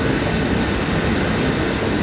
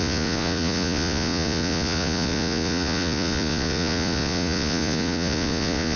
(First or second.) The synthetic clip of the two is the second